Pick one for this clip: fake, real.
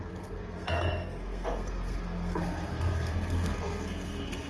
fake